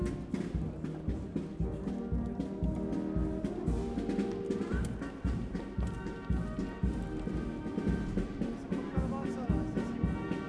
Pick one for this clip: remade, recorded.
recorded